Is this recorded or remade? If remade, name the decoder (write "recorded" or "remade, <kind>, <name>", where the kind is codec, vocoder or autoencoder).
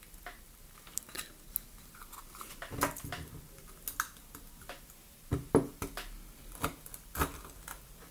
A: recorded